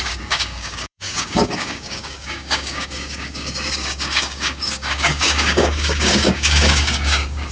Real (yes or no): no